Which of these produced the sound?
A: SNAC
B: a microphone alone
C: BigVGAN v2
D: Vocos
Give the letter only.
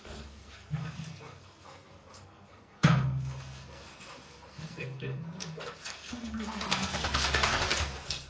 A